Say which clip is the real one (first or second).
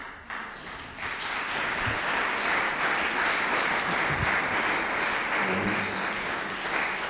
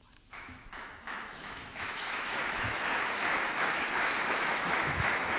first